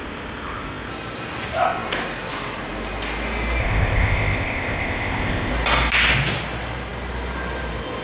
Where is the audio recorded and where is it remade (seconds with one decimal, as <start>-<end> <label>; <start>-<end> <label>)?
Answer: 0.0-0.9 remade; 0.9-3.6 recorded; 3.6-5.5 remade; 5.5-8.0 recorded